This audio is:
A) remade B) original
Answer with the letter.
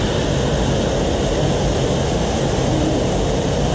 B